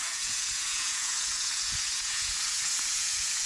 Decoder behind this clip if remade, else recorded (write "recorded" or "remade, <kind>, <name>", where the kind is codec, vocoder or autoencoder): remade, vocoder, Vocos